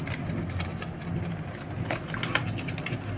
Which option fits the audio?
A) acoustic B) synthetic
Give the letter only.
A